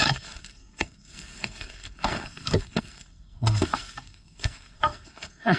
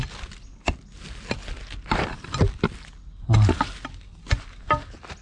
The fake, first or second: first